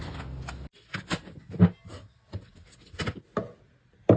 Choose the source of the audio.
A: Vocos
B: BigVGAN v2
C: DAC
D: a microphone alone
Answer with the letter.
D